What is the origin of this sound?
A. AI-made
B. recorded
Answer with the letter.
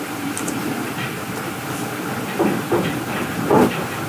A